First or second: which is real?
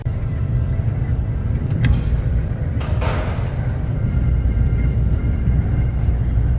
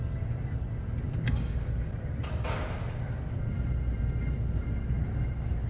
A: second